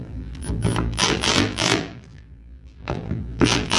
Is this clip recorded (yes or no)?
no